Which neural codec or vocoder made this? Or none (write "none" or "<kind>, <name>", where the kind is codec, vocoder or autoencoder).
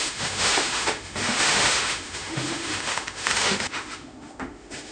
autoencoder, DAC-VAE